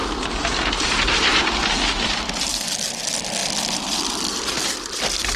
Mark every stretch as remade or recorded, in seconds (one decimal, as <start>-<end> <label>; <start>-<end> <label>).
0.0-5.4 recorded